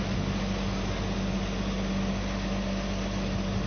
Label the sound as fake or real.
real